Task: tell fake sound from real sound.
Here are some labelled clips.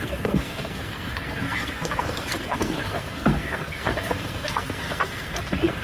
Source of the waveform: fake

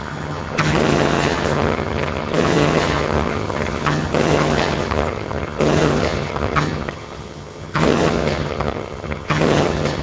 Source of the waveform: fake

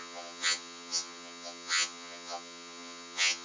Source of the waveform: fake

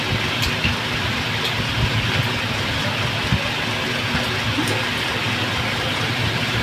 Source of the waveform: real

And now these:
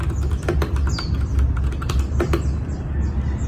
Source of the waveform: real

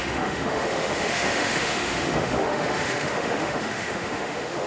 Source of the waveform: fake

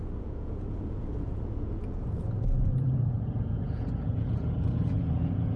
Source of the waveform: fake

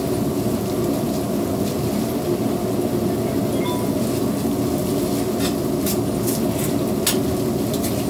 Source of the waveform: real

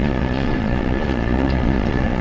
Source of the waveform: fake